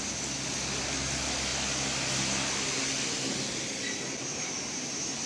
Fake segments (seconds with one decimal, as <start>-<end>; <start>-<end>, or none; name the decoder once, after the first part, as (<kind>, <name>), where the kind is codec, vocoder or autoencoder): none